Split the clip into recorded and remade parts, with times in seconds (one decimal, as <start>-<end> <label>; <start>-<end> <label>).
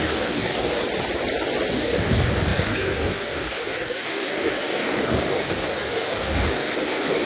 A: 0.0-0.8 remade; 0.8-1.7 recorded; 1.7-7.3 remade